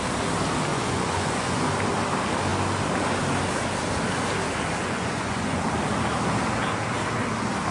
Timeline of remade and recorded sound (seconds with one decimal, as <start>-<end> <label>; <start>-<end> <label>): 0.0-0.7 recorded; 0.7-1.7 remade; 1.7-4.8 recorded; 4.8-5.6 remade; 5.6-7.7 recorded